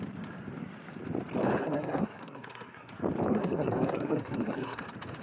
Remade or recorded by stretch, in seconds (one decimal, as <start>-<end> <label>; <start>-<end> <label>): 0.0-1.6 recorded; 1.6-2.9 remade; 2.9-3.3 recorded; 3.3-4.8 remade; 4.8-5.2 recorded